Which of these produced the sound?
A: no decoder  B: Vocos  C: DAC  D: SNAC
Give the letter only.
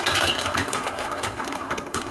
D